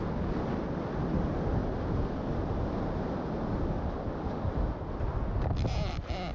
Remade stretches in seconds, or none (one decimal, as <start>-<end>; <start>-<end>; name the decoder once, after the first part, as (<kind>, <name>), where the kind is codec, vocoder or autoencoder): none